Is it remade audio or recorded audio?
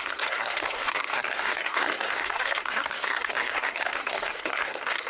remade